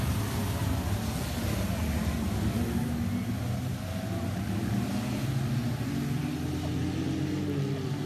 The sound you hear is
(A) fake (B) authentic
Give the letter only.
B